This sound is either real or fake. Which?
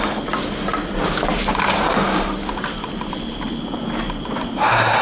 real